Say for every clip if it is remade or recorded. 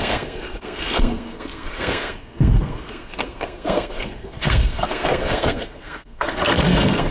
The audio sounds remade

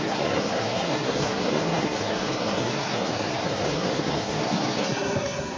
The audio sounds remade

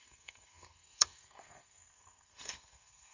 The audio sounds remade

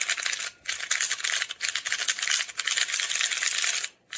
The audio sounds recorded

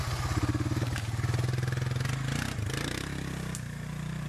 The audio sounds recorded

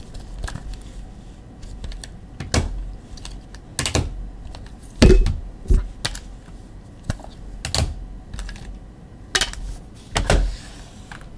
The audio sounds recorded